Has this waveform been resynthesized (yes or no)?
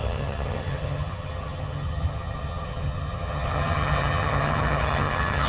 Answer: yes